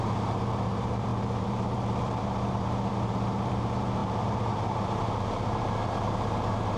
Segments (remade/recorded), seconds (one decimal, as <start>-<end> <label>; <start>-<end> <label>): 0.0-6.8 remade